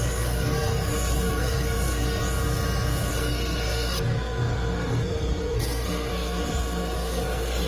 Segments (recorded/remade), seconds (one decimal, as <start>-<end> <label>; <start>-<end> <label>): 0.0-2.2 remade; 2.2-3.1 recorded; 3.1-7.7 remade